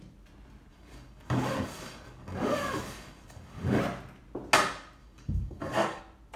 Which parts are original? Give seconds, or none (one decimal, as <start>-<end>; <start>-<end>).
0.0-0.7; 3.8-5.0; 6.0-6.4